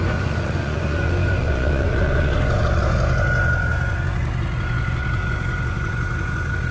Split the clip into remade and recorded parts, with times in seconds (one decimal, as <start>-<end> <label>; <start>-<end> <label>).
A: 0.0-6.7 remade